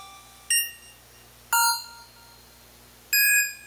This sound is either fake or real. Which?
real